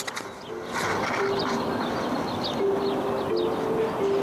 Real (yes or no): yes